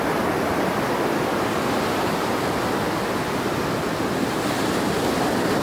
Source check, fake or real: real